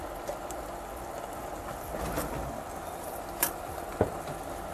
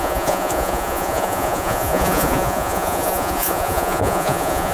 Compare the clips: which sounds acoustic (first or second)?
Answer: first